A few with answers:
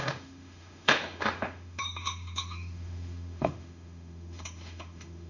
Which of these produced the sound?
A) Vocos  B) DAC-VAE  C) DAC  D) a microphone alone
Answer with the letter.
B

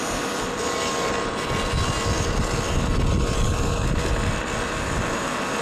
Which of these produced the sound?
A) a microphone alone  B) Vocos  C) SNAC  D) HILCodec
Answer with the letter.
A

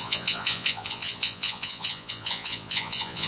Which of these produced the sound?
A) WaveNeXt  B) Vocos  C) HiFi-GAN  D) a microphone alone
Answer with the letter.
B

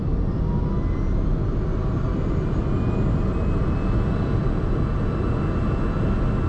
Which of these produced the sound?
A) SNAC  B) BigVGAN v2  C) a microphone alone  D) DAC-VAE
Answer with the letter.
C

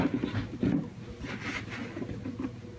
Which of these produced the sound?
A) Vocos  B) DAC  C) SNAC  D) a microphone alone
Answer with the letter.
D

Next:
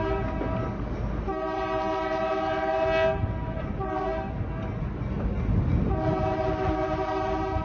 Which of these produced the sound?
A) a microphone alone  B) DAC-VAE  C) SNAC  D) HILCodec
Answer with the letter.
A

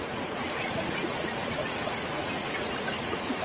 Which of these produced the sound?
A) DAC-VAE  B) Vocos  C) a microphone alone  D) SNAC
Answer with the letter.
B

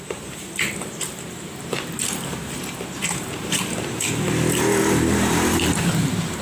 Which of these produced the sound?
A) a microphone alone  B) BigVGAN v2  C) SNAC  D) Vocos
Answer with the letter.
B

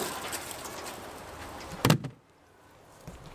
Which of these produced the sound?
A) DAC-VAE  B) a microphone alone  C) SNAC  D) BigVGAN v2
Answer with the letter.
B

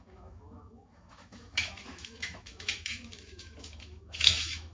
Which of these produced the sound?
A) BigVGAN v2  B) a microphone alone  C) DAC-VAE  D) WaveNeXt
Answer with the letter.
C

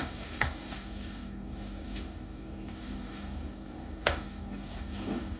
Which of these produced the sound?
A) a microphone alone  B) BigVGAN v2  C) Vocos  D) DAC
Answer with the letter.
D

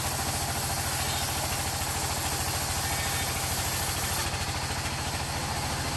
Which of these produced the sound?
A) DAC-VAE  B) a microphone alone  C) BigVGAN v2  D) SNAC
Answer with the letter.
B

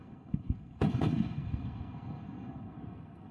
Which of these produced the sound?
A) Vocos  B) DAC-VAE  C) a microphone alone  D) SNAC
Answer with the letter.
D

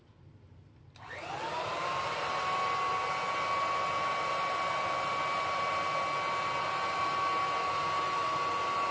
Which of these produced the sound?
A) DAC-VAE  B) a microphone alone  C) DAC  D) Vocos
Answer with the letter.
B